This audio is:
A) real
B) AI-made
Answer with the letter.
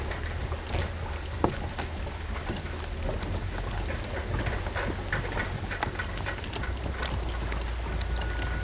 A